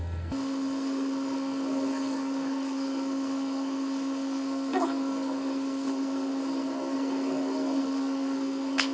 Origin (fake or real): fake